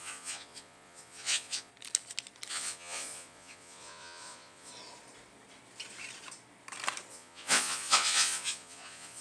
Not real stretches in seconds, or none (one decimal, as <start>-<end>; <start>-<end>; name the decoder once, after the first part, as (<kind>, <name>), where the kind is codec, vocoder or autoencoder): 0.0-1.7 (vocoder, Vocos); 2.5-4.7; 7.1-9.2